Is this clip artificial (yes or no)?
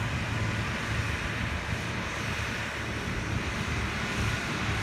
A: no